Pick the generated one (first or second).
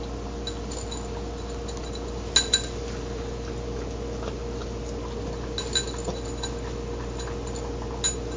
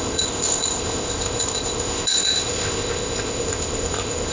second